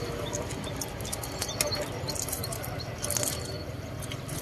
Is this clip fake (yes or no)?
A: no